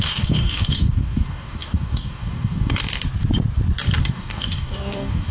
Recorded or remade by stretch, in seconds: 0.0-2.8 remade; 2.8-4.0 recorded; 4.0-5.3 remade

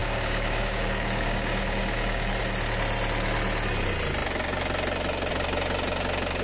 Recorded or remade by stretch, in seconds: 0.0-2.4 remade; 2.4-6.4 recorded

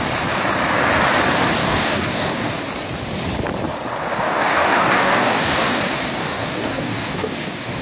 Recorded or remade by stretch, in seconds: 0.0-1.6 recorded; 1.6-2.5 remade; 2.5-4.1 recorded; 4.1-5.8 remade; 5.8-6.2 recorded; 6.2-7.8 remade

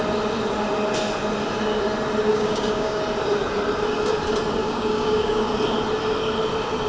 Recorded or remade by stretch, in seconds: 0.0-2.3 recorded; 2.3-3.0 remade; 3.0-4.6 recorded; 4.6-5.5 remade; 5.5-6.9 recorded

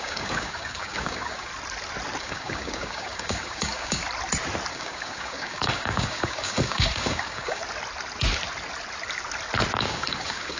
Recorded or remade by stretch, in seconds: 0.0-1.5 remade; 1.5-2.2 recorded; 2.2-4.0 remade; 4.0-4.7 recorded; 4.7-7.6 remade; 7.6-9.8 recorded; 9.8-10.6 remade

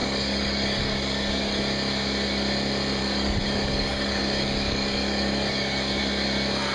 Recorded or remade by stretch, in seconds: 0.0-1.6 remade; 1.6-3.0 recorded; 3.0-6.0 remade; 6.0-6.7 recorded